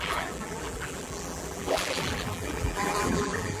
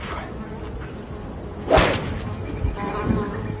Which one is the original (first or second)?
second